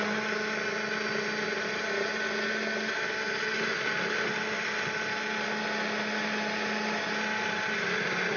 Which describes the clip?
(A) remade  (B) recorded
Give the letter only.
B